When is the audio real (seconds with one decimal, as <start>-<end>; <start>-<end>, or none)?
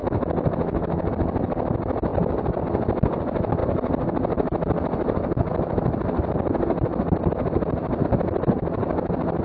1.1-9.4